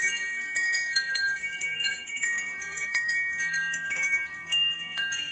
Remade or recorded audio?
remade